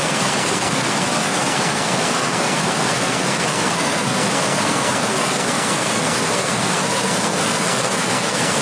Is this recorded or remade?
remade